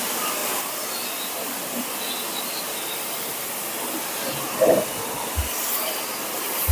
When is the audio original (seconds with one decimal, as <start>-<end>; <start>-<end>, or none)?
0.0-6.7